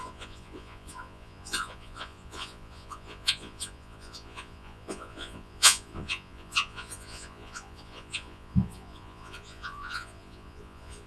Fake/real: fake